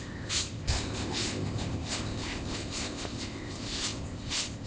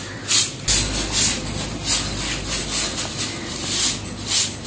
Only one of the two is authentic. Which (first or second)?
second